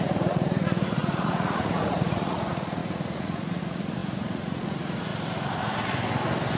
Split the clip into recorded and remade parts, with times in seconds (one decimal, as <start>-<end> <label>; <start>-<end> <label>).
0.0-5.1 remade; 5.1-6.6 recorded

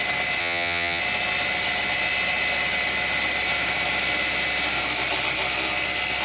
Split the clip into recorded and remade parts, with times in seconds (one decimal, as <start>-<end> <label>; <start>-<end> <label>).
0.0-0.4 recorded; 0.4-1.0 remade; 1.0-6.2 recorded

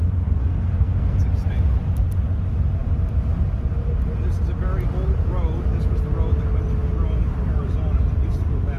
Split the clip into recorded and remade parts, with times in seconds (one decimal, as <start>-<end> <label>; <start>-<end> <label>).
0.0-0.4 recorded; 0.4-1.2 remade; 1.2-8.8 recorded

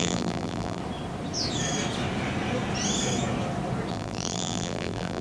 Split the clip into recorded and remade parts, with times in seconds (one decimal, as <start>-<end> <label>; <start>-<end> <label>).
0.0-0.8 remade; 0.8-3.9 recorded; 3.9-5.2 remade

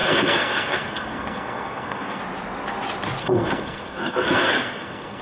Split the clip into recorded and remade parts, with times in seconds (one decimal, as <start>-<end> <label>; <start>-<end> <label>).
0.0-2.2 remade; 2.2-3.2 recorded; 3.2-5.2 remade

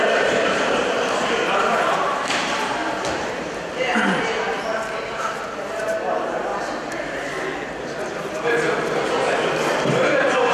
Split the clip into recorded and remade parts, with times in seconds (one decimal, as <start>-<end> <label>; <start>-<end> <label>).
0.0-2.8 remade; 2.8-3.4 recorded; 3.4-6.5 remade; 6.5-9.7 recorded; 9.7-10.5 remade